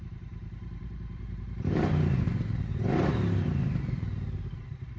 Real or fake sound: fake